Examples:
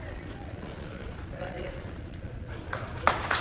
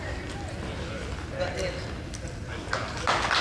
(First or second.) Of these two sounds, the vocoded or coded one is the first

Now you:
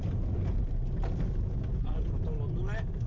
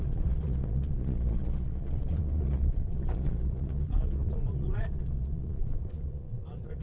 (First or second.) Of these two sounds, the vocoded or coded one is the second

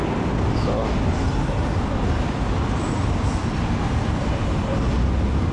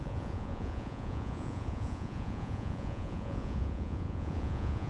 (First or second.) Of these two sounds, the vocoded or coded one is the second